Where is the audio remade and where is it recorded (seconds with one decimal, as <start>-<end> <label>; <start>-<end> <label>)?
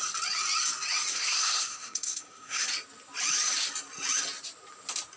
0.0-1.1 recorded; 1.1-2.6 remade; 2.6-5.2 recorded